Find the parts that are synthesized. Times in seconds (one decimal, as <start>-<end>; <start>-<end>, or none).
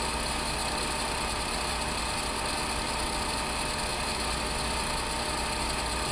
0.6-2.0; 3.9-4.9